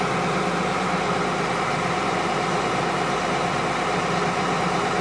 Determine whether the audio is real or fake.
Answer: real